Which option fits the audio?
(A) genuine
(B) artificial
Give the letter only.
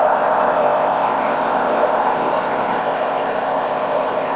B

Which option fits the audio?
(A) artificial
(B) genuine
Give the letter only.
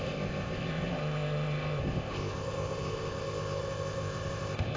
A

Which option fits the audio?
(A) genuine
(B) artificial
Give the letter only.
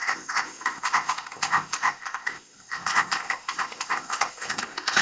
B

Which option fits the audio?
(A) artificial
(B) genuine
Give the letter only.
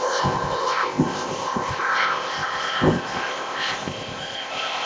A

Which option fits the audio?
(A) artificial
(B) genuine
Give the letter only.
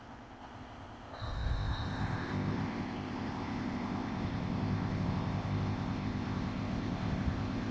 A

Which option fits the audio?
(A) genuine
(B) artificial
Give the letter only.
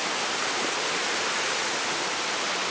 A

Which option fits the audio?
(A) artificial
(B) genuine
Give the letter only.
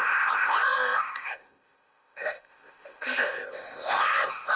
A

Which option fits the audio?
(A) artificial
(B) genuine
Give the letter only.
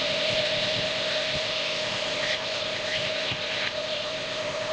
A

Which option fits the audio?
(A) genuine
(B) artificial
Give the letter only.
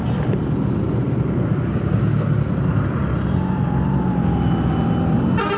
A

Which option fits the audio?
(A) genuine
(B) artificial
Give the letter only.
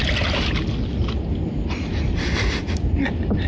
A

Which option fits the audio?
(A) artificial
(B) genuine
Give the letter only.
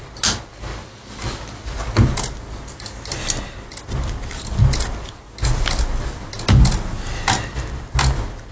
B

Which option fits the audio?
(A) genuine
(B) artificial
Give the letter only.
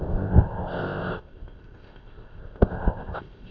B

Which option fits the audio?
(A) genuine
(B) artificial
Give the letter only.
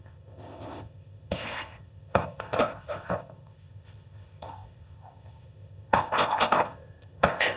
B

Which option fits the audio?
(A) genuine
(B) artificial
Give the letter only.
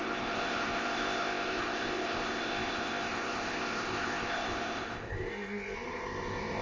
B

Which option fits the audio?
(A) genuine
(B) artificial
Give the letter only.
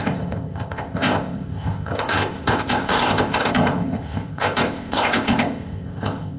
B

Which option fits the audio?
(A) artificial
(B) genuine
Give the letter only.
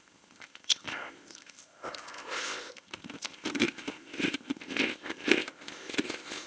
A